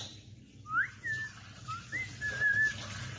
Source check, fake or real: real